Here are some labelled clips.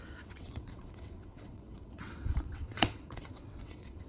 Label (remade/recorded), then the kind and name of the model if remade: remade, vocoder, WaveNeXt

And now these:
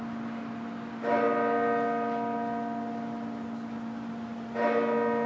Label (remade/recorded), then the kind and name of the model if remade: recorded